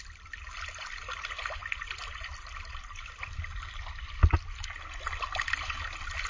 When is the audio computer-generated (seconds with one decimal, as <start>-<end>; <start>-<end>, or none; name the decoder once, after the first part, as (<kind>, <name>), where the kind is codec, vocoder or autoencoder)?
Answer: none